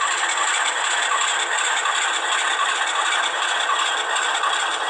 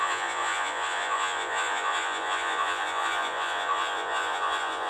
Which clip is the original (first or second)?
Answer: first